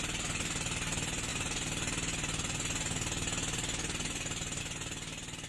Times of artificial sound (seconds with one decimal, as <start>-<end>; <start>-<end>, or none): none